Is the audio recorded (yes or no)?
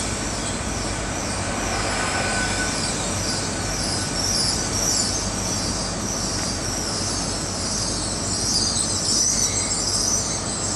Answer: yes